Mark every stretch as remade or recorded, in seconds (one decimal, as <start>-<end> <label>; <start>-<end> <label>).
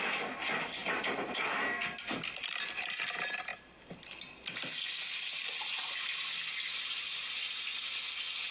0.0-0.8 recorded; 0.8-3.0 remade; 3.0-5.4 recorded; 5.4-7.2 remade; 7.2-8.5 recorded